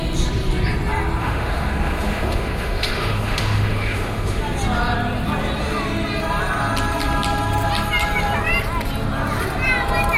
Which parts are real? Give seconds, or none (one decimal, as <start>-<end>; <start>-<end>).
0.0-1.2; 4.4-10.2